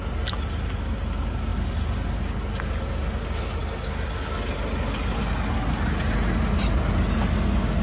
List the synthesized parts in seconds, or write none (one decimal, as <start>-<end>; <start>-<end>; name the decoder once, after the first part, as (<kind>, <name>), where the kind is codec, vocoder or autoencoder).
none